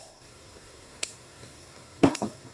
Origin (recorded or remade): remade